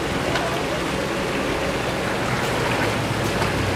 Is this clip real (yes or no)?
yes